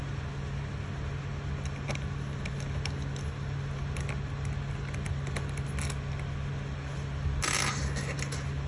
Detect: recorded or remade recorded